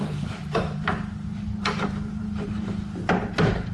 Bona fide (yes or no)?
no